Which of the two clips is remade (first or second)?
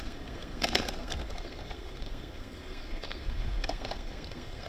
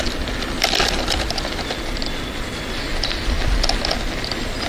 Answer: first